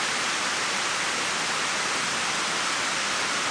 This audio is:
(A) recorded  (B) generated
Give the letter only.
A